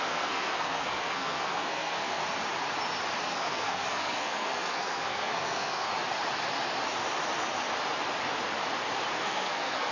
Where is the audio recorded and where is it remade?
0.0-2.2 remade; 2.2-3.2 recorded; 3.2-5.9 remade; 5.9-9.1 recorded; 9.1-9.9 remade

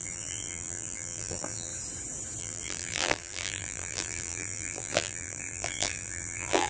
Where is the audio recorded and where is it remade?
0.0-1.7 remade; 1.7-2.4 recorded; 2.4-6.7 remade

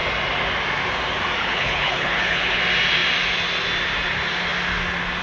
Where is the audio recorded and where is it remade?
0.0-1.4 recorded; 1.4-2.6 remade; 2.6-5.2 recorded